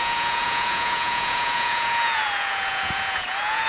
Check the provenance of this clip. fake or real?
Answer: fake